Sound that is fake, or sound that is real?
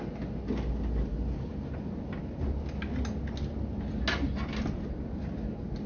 real